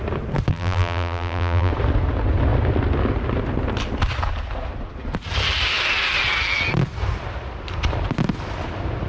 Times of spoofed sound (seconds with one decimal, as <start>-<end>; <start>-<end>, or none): 0.5-1.7